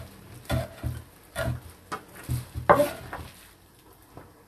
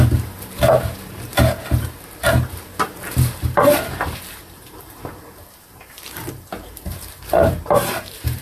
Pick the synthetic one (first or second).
second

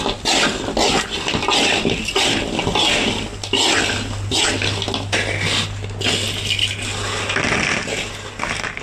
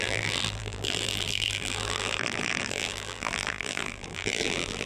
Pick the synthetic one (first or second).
second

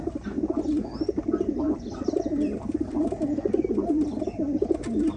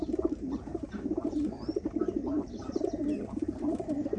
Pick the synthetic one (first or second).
second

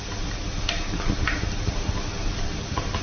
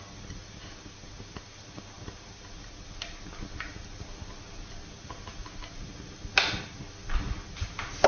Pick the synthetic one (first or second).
first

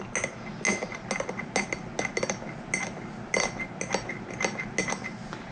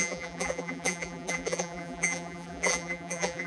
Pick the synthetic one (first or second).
second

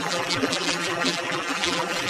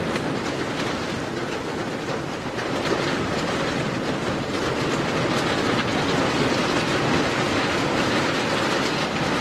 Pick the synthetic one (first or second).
first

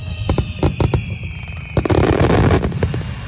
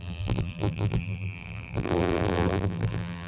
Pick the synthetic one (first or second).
second